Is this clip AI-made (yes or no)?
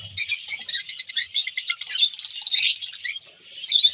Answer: no